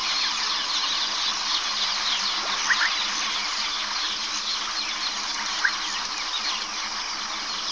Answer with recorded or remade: recorded